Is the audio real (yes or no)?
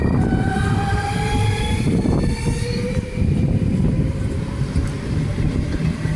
no